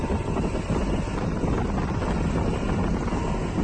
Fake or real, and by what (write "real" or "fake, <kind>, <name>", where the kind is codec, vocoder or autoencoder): real